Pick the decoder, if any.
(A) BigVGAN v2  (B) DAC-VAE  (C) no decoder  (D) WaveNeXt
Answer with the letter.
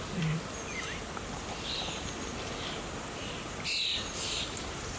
C